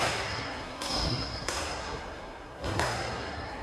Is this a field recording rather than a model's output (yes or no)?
no